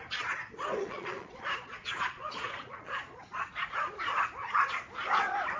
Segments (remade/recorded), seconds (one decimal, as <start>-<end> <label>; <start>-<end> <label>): 0.0-0.8 recorded; 0.8-3.9 remade; 3.9-5.6 recorded